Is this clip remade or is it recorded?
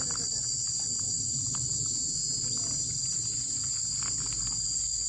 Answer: recorded